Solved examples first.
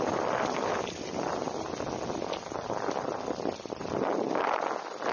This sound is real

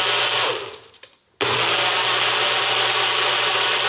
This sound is real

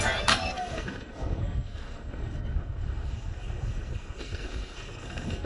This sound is fake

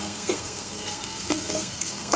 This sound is fake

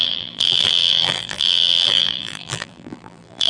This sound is fake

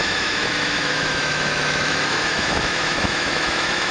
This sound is fake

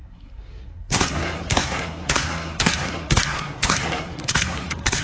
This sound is fake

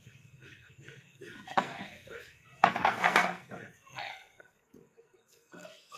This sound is fake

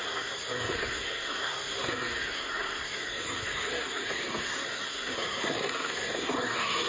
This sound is fake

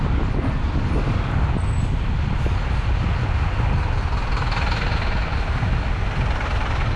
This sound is real